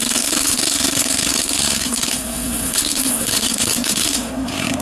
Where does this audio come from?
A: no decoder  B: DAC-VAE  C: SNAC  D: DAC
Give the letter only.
C